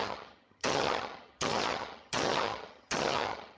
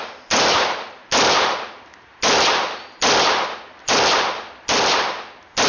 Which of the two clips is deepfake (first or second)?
first